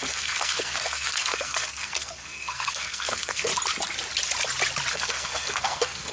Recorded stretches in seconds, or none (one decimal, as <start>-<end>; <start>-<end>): 3.5-4.9